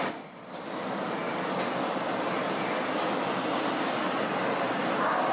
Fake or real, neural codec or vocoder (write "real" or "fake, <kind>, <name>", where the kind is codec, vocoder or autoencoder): fake, vocoder, BigVGAN v2